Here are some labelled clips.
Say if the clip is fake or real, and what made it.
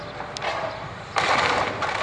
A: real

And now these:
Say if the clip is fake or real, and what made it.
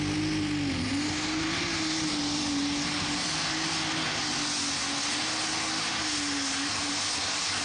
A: real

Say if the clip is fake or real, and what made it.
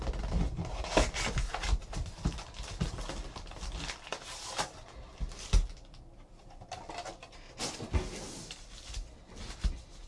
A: real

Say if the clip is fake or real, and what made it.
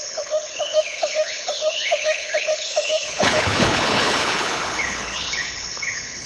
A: fake, codec, HILCodec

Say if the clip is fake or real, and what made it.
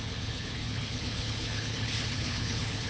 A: fake, codec, HILCodec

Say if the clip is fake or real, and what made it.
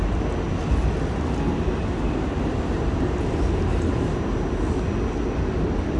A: real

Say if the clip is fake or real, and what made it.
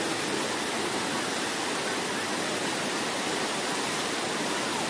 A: real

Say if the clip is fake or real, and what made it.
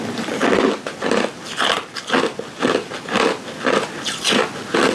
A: real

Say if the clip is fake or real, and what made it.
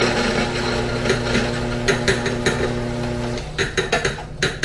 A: real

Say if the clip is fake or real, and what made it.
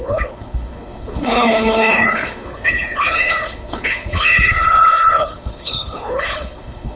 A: fake, codec, HILCodec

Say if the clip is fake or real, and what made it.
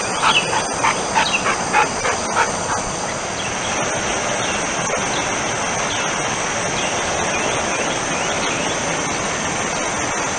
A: real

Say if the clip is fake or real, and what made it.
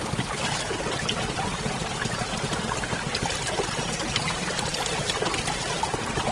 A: real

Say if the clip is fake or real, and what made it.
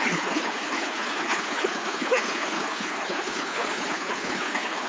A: fake, codec, HILCodec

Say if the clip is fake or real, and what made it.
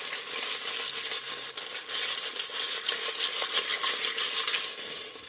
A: real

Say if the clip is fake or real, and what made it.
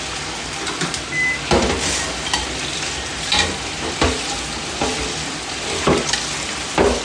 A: real